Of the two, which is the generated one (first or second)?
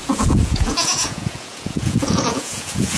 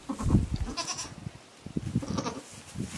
first